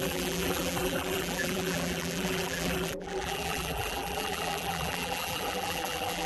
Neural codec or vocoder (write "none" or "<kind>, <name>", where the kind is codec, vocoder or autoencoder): vocoder, BigVGAN v2